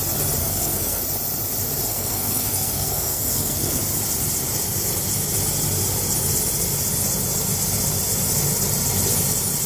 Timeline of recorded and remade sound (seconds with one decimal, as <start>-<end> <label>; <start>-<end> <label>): 0.0-0.4 recorded; 0.4-1.0 remade; 1.0-1.9 recorded; 1.9-3.8 remade; 3.8-9.7 recorded